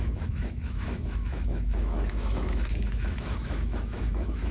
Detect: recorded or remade remade